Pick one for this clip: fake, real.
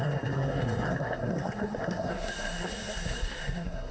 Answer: fake